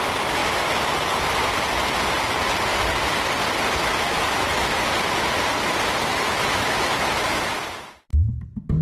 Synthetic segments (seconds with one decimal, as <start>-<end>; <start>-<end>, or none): 3.8-4.8; 6.1-7.2